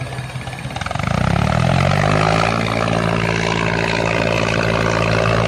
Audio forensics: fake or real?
real